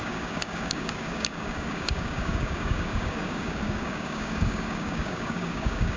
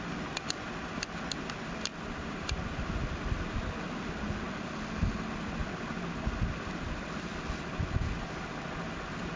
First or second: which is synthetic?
first